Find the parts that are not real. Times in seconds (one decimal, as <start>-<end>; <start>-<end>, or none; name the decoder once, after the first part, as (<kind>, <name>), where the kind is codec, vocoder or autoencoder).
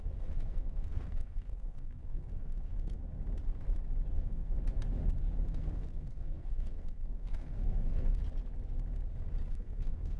0.0-3.0 (codec, SNAC); 4.1-4.5; 5.5-8.2; 9.5-10.2